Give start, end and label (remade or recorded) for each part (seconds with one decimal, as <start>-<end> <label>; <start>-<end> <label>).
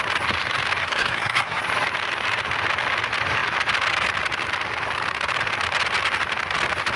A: 0.0-0.8 recorded; 0.8-1.6 remade; 1.6-7.0 recorded